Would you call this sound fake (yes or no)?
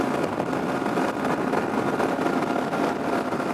no